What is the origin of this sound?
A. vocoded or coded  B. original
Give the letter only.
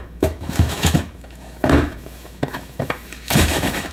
A